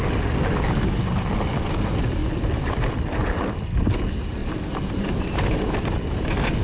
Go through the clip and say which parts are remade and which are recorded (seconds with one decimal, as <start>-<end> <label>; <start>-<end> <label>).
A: 0.0-4.4 recorded; 4.4-5.2 remade; 5.2-6.6 recorded